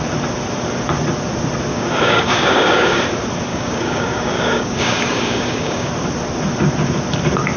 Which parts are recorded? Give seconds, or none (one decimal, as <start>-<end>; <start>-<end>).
0.0-1.7; 3.0-3.5; 5.9-7.6